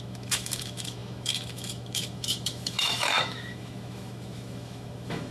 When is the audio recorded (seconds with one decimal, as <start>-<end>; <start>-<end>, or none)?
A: none